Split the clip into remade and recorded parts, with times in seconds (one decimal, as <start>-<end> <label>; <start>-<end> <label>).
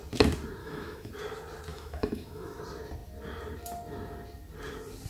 0.0-0.6 recorded; 0.6-1.1 remade; 1.1-1.7 recorded; 1.7-2.6 remade; 2.6-5.1 recorded